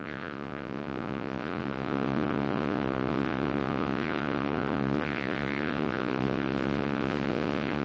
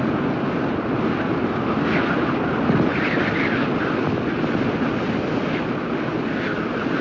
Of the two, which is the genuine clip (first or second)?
second